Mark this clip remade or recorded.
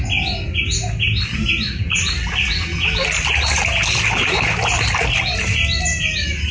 recorded